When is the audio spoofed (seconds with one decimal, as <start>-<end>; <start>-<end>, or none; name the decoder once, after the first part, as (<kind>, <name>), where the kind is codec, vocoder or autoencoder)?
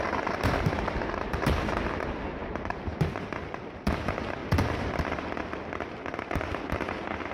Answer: none